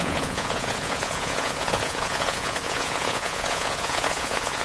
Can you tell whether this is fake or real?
fake